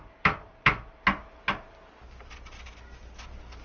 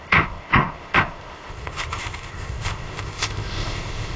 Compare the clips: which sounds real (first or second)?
first